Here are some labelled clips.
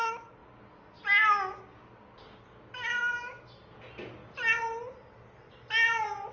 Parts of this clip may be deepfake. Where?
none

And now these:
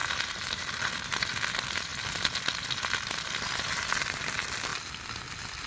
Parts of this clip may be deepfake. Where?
0.0-1.2 (vocoder, BigVGAN v2)

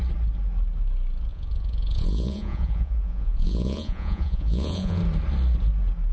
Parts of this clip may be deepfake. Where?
1.3-5.0 (vocoder, Vocos)

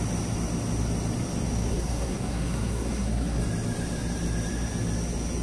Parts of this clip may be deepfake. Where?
1.7-3.4 (codec, SNAC)

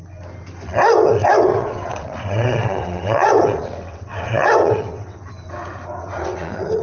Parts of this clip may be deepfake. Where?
1.2-5.3 (vocoder, WaveNeXt); 6.0-6.8